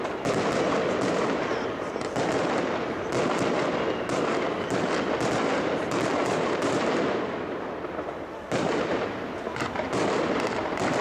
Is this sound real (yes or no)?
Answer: yes